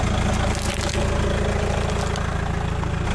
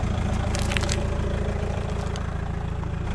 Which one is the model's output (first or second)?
second